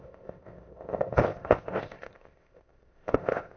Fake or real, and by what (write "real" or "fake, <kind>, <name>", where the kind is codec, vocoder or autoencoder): fake, codec, ZipCodec